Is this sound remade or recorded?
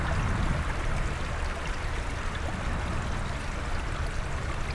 recorded